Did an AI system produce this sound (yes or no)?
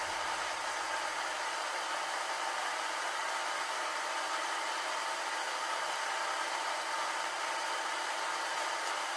no